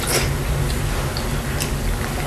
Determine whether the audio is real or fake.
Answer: real